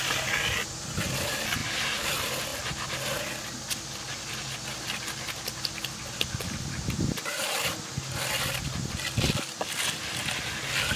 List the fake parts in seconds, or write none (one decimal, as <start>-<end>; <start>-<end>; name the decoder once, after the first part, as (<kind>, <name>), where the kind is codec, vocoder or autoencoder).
none